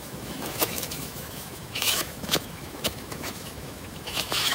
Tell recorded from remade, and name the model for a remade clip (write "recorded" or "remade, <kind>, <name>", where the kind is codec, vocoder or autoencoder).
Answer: remade, autoencoder, DAC-VAE